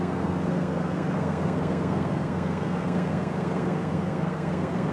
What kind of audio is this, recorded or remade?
remade